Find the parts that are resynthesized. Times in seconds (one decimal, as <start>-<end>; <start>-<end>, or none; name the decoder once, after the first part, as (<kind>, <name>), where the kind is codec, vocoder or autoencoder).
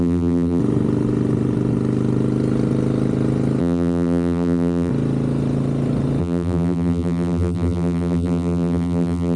0.0-0.6 (vocoder, BigVGAN v2); 3.6-4.9; 6.2-9.4